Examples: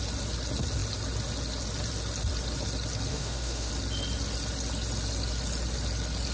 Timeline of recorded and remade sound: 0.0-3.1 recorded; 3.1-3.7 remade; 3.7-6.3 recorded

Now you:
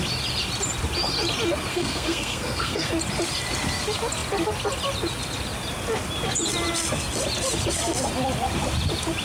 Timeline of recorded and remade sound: 0.0-1.7 recorded; 1.7-2.9 remade; 2.9-9.2 recorded